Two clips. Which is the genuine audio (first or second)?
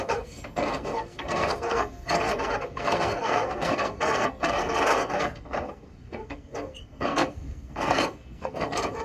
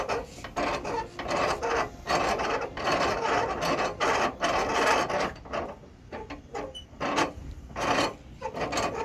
second